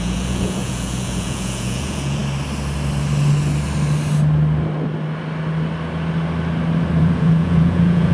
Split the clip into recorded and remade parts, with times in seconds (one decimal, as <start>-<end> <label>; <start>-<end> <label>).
0.0-2.2 remade; 2.2-7.0 recorded; 7.0-8.1 remade